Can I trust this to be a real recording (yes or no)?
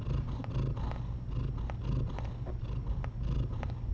yes